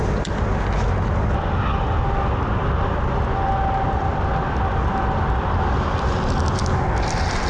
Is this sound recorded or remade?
recorded